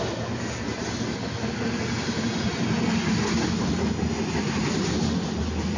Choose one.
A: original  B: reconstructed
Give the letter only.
A